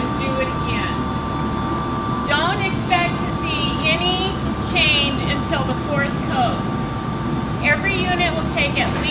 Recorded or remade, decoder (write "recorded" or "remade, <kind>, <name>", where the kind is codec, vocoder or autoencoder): recorded